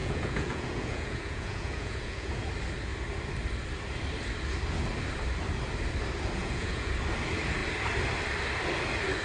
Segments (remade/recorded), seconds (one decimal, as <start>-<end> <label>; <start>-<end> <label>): 0.0-2.5 remade; 2.5-6.4 recorded; 6.4-6.9 remade; 6.9-9.2 recorded